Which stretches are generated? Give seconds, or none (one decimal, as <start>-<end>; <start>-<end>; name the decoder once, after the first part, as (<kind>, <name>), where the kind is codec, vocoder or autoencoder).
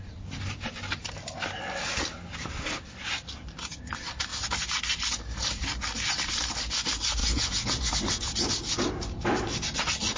7.2-7.9 (vocoder, Vocos)